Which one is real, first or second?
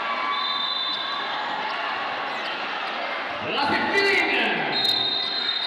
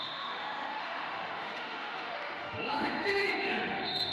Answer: first